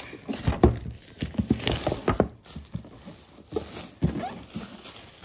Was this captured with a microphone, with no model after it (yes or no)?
yes